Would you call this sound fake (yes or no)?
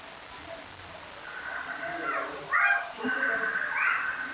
no